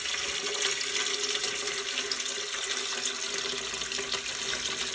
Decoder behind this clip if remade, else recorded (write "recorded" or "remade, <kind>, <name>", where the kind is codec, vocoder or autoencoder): recorded